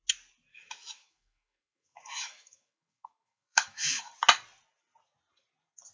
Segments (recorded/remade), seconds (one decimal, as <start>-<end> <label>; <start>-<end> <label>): 0.0-0.5 recorded; 0.5-4.0 remade; 4.0-5.9 recorded